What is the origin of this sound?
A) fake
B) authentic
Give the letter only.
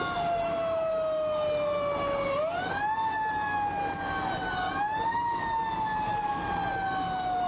B